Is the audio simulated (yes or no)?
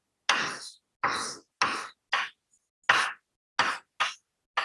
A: no